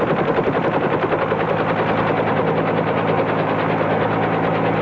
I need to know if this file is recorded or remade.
recorded